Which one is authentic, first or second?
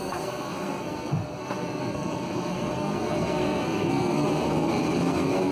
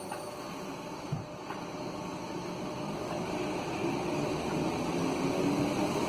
second